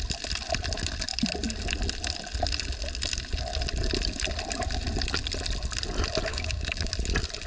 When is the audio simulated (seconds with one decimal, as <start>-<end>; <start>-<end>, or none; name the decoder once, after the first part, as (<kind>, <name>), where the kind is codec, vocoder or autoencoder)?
6.3-6.9 (codec, DAC)

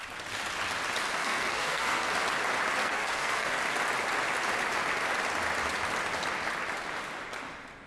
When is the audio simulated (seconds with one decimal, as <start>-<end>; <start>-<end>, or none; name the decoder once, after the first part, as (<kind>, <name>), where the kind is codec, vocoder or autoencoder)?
1.2-2.1 (codec, SNAC); 2.8-3.6

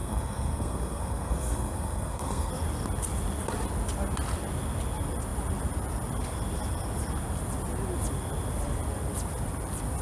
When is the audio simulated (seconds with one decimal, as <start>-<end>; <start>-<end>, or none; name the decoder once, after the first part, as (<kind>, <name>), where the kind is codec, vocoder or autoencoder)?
0.0-2.5 (codec, SNAC)